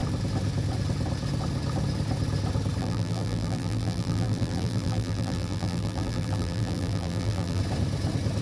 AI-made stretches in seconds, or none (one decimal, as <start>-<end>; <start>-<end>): 2.8-7.6